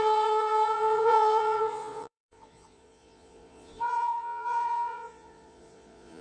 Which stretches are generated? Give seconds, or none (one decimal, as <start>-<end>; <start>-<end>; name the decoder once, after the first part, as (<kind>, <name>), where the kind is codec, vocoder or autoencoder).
0.0-6.2 (vocoder, Vocos)